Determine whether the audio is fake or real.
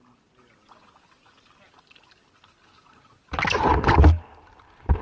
real